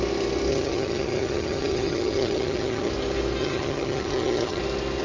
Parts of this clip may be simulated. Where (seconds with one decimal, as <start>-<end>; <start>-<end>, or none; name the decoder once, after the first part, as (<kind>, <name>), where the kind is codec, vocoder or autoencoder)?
0.5-2.9 (vocoder, HiFi-GAN); 3.4-4.6